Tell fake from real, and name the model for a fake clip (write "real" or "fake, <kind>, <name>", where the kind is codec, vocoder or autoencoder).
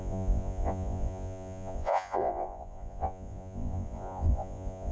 fake, vocoder, Vocos